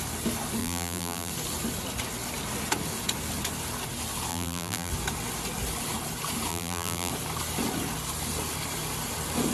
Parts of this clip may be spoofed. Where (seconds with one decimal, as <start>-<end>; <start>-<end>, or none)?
0.6-1.3; 4.3-4.9; 6.5-7.1